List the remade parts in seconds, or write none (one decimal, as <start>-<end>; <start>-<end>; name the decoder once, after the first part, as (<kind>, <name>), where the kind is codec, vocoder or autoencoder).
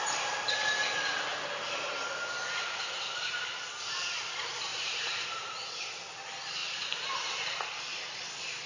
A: 4.7-5.5 (vocoder, BigVGAN v2); 6.6-8.0